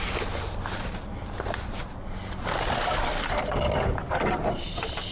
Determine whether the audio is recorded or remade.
recorded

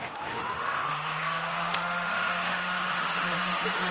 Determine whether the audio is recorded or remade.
remade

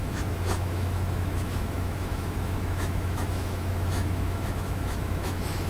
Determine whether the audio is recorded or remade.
remade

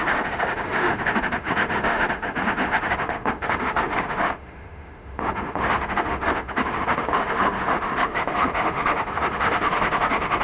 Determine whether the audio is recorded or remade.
remade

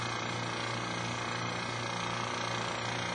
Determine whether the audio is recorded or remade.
recorded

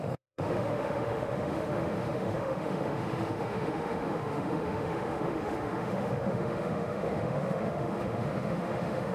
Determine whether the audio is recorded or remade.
remade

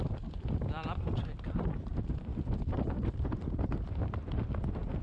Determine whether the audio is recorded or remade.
recorded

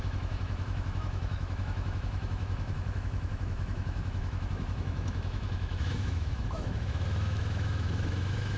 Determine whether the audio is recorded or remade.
remade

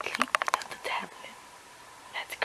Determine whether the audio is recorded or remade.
recorded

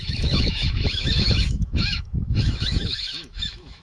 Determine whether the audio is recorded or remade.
remade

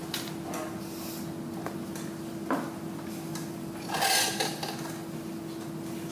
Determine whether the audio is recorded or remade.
recorded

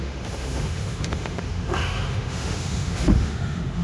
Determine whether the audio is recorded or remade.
remade